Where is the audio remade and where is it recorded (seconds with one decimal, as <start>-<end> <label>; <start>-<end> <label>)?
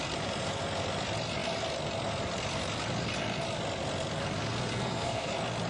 0.0-4.7 recorded; 4.7-5.3 remade; 5.3-5.7 recorded